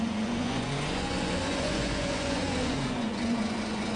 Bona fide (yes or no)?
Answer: no